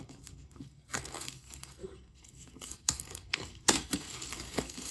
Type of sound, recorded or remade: remade